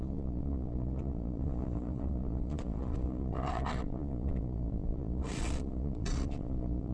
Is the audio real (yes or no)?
no